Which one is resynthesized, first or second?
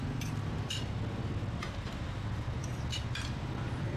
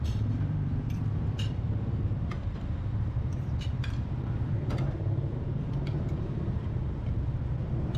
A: second